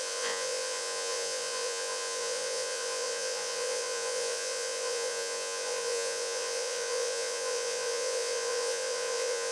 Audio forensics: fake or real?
fake